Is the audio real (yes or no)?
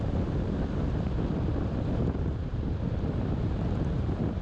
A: no